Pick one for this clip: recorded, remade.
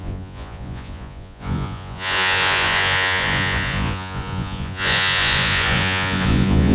remade